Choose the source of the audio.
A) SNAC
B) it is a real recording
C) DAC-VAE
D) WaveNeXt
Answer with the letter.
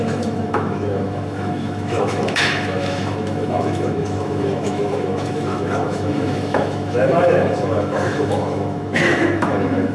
C